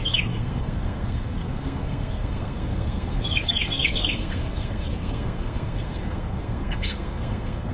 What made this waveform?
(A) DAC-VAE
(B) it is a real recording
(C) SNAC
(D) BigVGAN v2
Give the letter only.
C